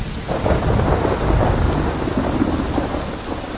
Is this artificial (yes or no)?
no